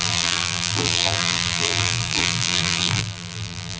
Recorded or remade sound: remade